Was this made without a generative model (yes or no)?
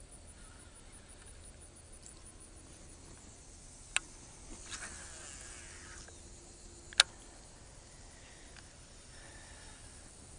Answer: yes